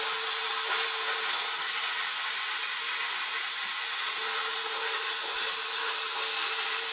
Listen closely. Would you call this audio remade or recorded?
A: recorded